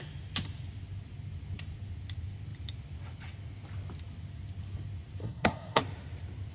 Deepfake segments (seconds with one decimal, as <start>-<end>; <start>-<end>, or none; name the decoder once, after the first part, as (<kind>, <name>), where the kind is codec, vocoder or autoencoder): 5.2-5.8 (codec, SNAC)

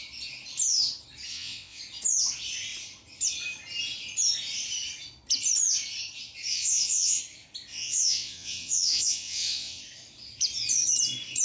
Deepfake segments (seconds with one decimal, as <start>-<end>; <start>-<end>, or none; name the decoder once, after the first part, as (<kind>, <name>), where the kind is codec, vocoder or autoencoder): 1.3-1.8 (vocoder, WaveNeXt); 6.5-7.2; 7.7-9.8

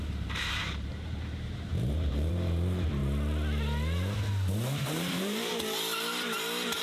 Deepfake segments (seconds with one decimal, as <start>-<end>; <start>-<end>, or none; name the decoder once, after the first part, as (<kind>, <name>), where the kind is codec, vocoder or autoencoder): 0.0-3.0 (vocoder, BigVGAN v2); 4.8-5.5

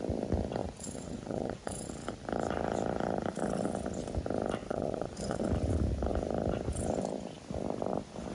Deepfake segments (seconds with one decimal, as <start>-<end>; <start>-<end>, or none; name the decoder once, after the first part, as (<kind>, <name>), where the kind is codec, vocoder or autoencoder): 0.6-1.9 (vocoder, Vocos); 4.6-5.4

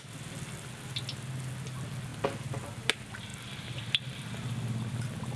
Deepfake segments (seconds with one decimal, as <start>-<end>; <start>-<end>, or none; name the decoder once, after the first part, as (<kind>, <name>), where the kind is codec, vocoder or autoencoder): none

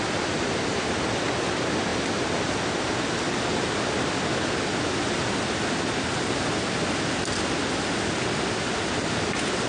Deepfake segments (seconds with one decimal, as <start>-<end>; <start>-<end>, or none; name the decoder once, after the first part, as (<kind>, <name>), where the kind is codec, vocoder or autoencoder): none

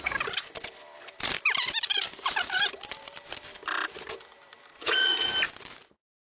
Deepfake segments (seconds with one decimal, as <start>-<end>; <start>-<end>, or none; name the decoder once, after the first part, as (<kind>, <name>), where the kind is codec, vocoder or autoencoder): 4.7-5.3 (vocoder, Vocos)

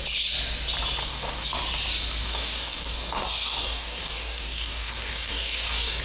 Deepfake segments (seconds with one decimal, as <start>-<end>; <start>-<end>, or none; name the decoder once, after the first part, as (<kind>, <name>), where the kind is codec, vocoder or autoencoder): 1.0-1.5 (codec, DAC); 2.2-6.0